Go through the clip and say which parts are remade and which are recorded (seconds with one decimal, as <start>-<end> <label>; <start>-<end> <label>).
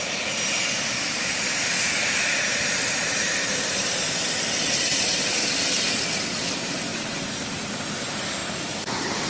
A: 0.0-8.4 remade; 8.4-9.3 recorded